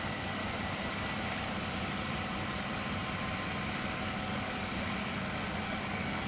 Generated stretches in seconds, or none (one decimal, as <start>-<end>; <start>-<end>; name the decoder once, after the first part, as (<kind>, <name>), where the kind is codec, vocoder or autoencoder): 0.0-0.4 (codec, DAC); 4.0-6.3